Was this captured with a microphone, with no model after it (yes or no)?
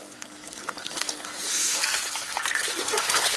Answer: no